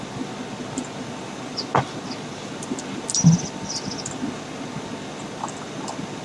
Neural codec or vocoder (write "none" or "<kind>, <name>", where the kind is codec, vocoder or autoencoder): none